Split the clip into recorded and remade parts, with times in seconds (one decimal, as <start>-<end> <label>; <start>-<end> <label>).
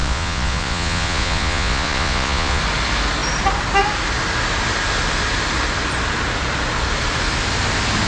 0.0-2.6 remade; 2.6-8.1 recorded